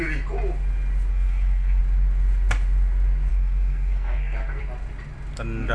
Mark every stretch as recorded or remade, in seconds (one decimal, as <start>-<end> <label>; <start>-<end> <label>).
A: 0.0-1.1 recorded; 1.1-1.8 remade; 1.8-3.3 recorded; 3.3-4.6 remade; 4.6-5.7 recorded